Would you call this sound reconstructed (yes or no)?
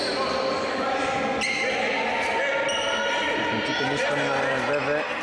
no